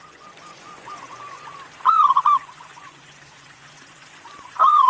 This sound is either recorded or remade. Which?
remade